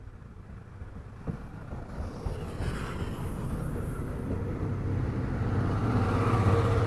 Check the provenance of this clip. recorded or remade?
recorded